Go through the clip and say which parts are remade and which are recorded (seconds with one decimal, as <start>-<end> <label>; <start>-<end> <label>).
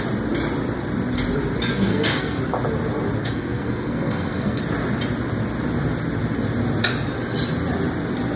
0.0-1.7 recorded; 1.7-2.4 remade; 2.4-3.2 recorded; 3.2-4.6 remade; 4.6-8.4 recorded